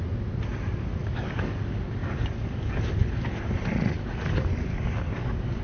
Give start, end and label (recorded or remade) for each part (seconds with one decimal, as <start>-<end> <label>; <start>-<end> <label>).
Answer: 0.0-1.0 recorded; 1.0-1.6 remade; 1.6-2.0 recorded; 2.0-2.7 remade; 2.7-4.7 recorded; 4.7-5.6 remade